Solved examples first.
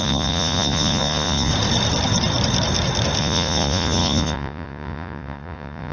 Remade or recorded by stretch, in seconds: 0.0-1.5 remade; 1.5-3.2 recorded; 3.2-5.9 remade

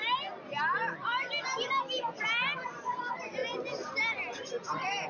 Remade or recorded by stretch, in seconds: 0.0-5.1 recorded

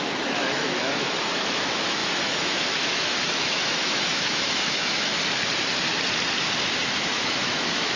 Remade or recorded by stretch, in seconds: 0.0-5.1 remade; 5.1-7.0 recorded; 7.0-8.0 remade